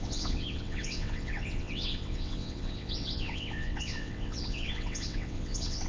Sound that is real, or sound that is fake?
fake